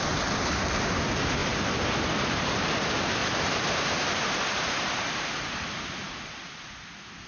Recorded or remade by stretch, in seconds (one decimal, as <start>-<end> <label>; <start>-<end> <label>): 0.0-1.4 recorded; 1.4-2.8 remade; 2.8-3.2 recorded; 3.2-6.3 remade; 6.3-7.3 recorded